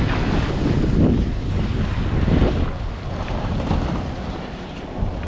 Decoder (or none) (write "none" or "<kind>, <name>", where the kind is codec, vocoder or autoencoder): none